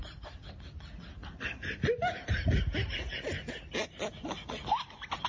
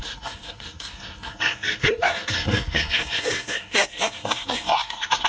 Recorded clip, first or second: first